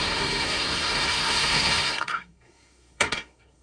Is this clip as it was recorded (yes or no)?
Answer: no